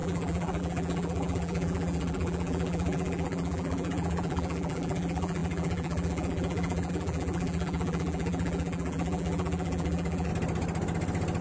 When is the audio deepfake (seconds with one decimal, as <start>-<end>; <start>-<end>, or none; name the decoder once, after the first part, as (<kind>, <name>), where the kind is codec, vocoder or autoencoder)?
0.0-10.3 (vocoder, BigVGAN v2)